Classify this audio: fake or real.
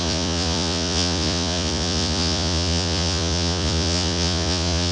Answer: fake